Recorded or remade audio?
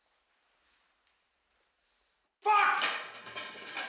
recorded